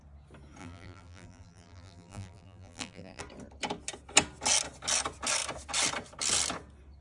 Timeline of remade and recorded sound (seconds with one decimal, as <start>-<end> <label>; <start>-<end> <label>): 0.0-0.6 recorded; 0.6-3.2 remade; 3.2-7.0 recorded